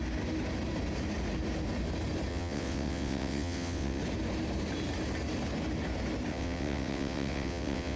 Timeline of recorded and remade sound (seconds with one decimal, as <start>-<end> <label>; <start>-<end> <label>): 0.0-2.3 recorded; 2.3-4.0 remade; 4.0-6.3 recorded; 6.3-8.0 remade